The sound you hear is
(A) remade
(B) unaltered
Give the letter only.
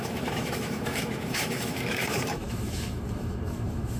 A